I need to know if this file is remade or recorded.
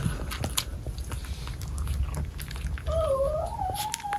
recorded